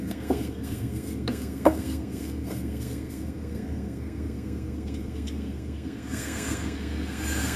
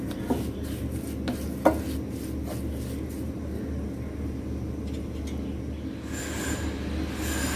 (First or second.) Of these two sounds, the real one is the second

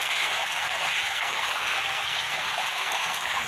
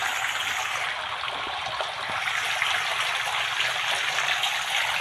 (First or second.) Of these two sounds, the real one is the second